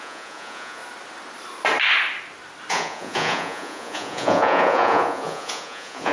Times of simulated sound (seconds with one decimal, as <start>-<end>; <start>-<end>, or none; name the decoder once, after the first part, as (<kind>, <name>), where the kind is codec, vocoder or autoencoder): 0.0-0.8 (vocoder, Vocos); 2.7-6.1